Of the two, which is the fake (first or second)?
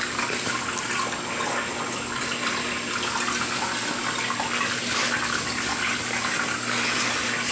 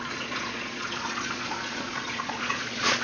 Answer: second